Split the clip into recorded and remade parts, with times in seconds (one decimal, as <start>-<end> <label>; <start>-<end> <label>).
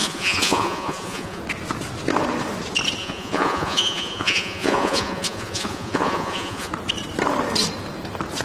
0.0-1.4 remade; 1.4-3.0 recorded; 3.0-6.7 remade; 6.7-8.4 recorded